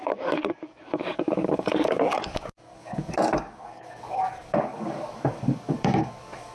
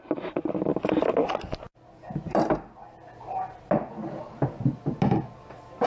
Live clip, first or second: second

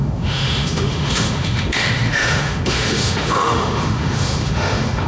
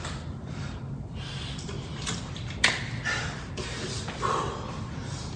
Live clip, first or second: second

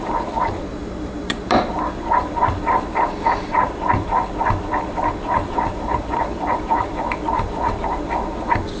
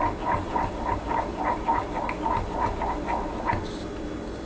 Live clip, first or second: second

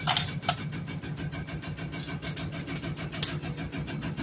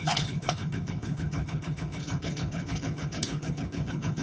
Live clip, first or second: first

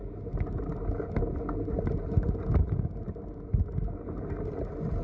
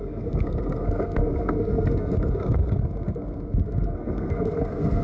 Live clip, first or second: first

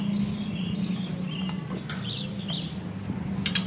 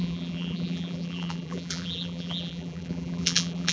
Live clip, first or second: first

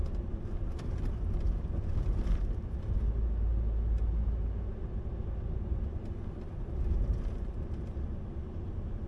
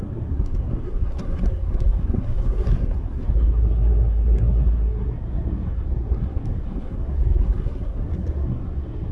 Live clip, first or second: first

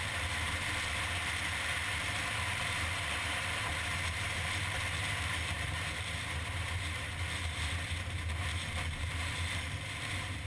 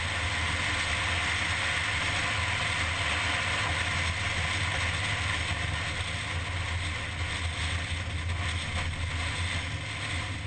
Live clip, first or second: second